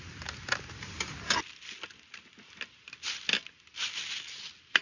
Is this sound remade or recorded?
recorded